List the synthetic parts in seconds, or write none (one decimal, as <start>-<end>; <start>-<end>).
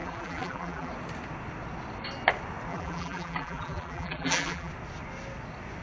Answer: 0.0-0.9; 2.7-4.7